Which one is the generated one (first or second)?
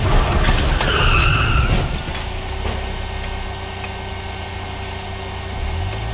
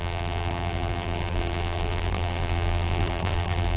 second